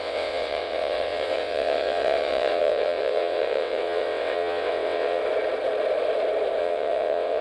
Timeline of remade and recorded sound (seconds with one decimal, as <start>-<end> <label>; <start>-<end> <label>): 0.0-5.2 remade; 5.2-6.6 recorded; 6.6-7.4 remade